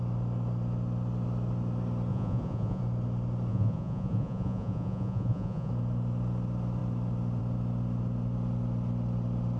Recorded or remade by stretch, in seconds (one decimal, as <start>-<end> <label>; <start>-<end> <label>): 0.0-2.1 recorded; 2.1-2.8 remade; 2.8-3.5 recorded; 3.5-5.7 remade; 5.7-9.6 recorded